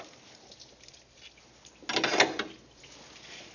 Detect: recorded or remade recorded